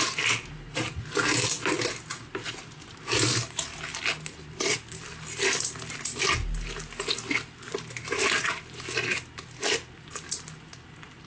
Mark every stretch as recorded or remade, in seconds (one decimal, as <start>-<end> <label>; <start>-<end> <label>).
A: 0.0-11.3 recorded

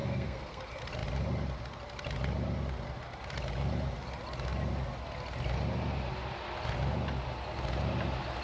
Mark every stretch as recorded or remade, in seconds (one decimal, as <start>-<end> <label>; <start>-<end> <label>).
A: 0.0-0.6 remade; 0.6-8.4 recorded

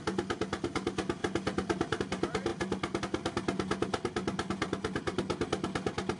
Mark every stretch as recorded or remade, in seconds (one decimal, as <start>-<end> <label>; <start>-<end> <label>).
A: 0.0-1.2 recorded; 1.2-2.0 remade; 2.0-6.2 recorded